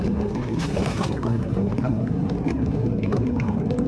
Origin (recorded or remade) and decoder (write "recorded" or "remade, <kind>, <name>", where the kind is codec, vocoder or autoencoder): remade, codec, SNAC